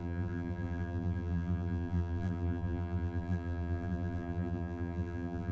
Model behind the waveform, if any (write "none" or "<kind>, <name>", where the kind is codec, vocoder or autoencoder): vocoder, BigVGAN v2